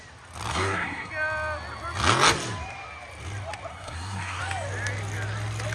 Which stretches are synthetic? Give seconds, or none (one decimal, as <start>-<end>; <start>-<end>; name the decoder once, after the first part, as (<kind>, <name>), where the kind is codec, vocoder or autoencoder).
0.5-1.1 (codec, SNAC); 3.7-4.4